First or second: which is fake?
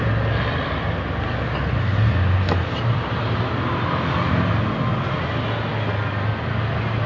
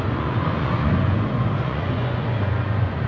second